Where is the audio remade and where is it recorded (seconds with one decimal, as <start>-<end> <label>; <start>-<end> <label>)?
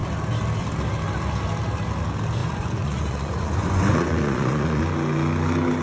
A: 0.0-2.4 recorded; 2.4-4.8 remade; 4.8-5.8 recorded